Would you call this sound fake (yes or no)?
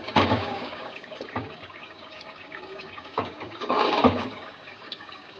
yes